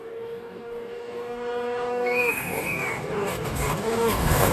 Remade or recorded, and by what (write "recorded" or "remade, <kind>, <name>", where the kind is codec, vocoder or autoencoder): remade, codec, DAC